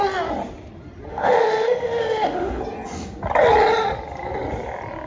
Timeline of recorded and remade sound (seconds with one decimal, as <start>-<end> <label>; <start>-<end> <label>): 0.0-1.1 recorded; 1.1-2.6 remade; 2.6-5.1 recorded